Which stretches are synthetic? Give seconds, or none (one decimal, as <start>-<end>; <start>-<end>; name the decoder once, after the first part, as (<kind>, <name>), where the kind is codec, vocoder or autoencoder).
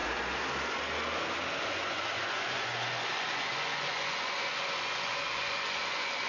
1.6-6.3 (vocoder, Vocos)